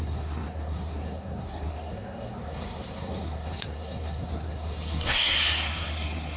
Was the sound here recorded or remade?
remade